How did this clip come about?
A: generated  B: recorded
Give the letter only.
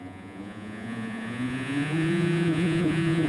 A